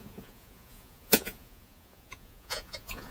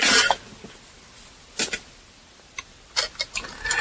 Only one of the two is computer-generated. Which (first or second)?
first